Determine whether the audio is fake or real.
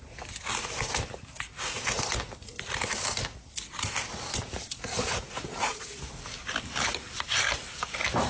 real